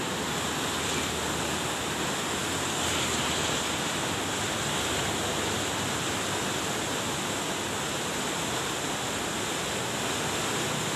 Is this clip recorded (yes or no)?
yes